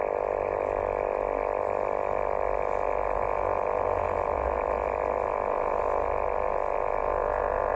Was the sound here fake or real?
real